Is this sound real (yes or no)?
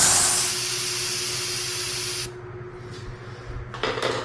yes